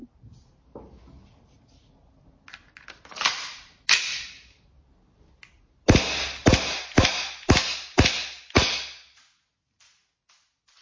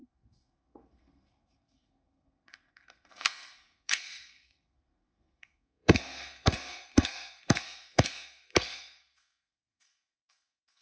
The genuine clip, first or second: first